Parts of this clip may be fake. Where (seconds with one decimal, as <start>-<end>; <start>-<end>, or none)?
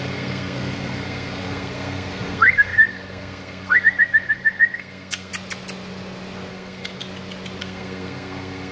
0.0-5.3; 6.5-7.0; 7.6-8.7